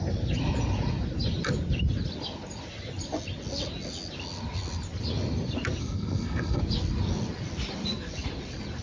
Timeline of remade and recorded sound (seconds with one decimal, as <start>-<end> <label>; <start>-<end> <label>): 0.0-5.8 recorded; 5.8-6.6 remade; 6.6-8.8 recorded